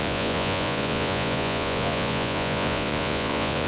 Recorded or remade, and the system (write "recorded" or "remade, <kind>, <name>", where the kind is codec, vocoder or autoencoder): remade, vocoder, Vocos